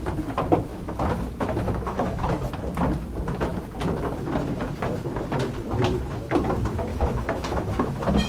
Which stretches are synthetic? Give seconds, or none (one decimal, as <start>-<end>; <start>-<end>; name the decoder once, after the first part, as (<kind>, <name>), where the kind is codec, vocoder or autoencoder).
0.7-2.3 (autoencoder, DAC-VAE); 6.9-7.9

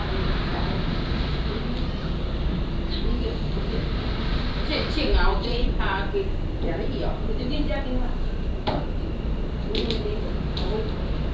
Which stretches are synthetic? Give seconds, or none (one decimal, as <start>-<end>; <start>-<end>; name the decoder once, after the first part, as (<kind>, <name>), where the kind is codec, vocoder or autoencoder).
5.3-5.8 (vocoder, WaveNeXt)

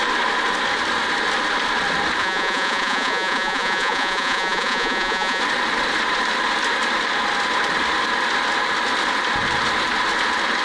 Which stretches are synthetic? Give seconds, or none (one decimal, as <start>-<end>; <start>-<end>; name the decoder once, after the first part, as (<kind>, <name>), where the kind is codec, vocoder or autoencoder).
2.2-5.4 (vocoder, Vocos)

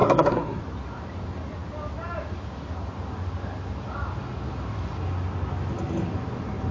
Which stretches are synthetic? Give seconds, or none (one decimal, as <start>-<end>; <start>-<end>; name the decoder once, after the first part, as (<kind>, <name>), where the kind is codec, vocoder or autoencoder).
0.0-0.6 (codec, SNAC)

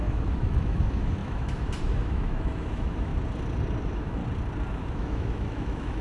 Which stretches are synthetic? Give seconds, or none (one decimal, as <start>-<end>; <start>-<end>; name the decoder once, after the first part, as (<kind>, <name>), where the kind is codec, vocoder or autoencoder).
0.0-3.1 (autoencoder, DAC-VAE); 3.8-4.2; 4.7-6.0

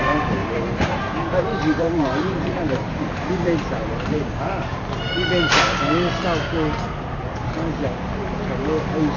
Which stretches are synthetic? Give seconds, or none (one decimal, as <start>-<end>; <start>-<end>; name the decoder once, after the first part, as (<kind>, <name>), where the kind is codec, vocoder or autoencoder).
0.4-4.4 (vocoder, BigVGAN v2)

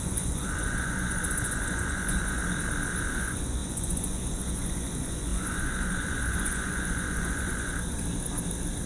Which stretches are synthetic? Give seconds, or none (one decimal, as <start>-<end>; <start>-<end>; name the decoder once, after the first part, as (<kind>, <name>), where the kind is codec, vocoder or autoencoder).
0.0-2.4 (vocoder, Vocos); 3.1-7.7